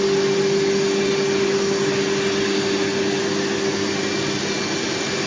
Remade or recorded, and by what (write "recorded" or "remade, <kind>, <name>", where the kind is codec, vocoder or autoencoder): recorded